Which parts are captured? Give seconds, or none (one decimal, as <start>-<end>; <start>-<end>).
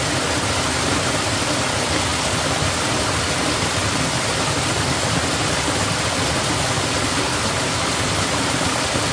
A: 0.0-9.1